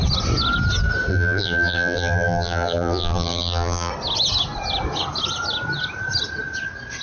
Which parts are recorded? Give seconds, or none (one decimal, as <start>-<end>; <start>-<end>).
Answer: 0.0-1.1; 3.9-7.0